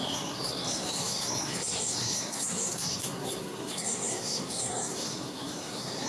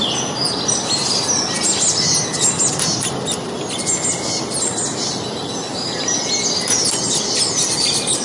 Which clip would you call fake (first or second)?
first